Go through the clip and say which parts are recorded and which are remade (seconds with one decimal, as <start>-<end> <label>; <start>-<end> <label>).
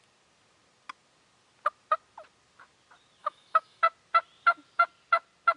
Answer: 0.0-3.2 recorded; 3.2-3.8 remade; 3.8-5.6 recorded